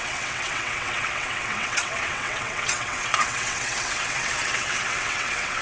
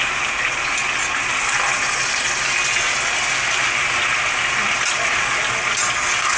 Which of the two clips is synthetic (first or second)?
first